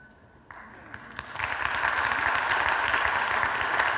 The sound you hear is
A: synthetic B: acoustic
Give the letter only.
B